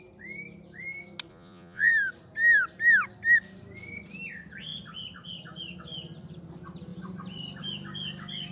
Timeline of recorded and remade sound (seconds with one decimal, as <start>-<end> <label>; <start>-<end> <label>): 0.0-1.3 recorded; 1.3-1.9 remade; 1.9-8.5 recorded